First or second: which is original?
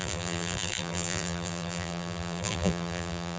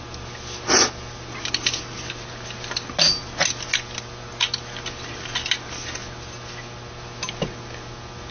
second